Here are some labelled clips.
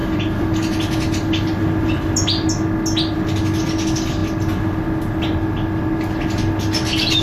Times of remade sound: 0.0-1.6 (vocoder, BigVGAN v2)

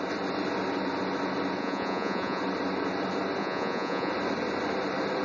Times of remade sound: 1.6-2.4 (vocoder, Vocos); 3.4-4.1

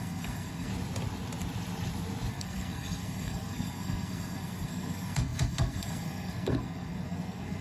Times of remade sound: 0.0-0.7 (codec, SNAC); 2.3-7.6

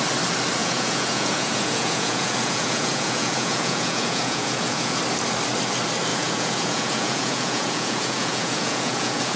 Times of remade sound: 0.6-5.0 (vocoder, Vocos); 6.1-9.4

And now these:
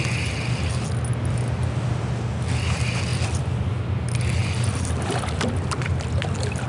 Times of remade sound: 3.1-3.8 (vocoder, BigVGAN v2); 4.4-5.1

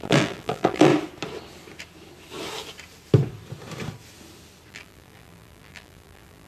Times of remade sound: 0.0-0.9 (vocoder, BigVGAN v2); 4.7-6.5